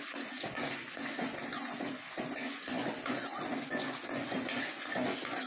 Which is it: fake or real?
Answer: fake